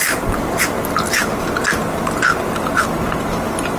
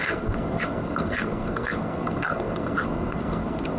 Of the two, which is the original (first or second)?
first